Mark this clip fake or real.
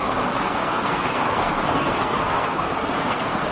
fake